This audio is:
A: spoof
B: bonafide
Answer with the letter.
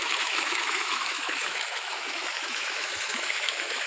A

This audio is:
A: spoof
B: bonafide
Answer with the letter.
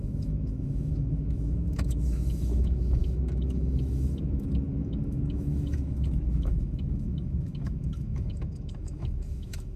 A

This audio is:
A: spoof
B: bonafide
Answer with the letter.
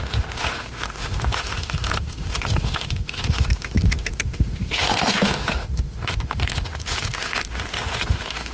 A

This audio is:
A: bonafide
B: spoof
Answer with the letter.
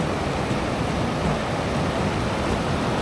A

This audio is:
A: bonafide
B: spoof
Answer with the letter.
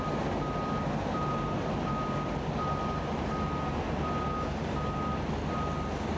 A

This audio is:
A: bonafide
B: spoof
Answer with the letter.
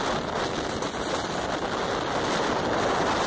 A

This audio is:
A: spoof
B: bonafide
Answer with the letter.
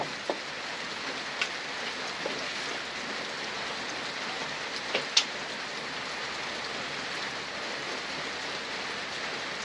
B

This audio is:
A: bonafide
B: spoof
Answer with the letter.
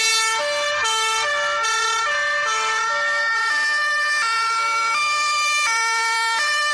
A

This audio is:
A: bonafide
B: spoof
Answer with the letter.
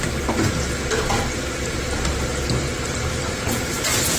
A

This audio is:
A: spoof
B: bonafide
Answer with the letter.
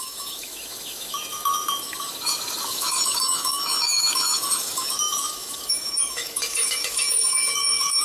A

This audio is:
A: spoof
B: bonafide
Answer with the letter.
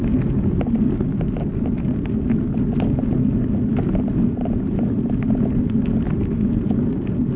B